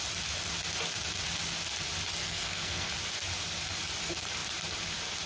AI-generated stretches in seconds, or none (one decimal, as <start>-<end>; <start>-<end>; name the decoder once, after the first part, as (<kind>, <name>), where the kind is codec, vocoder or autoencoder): 2.2-2.9 (codec, SNAC)